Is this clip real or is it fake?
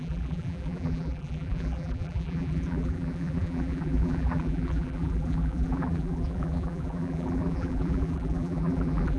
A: fake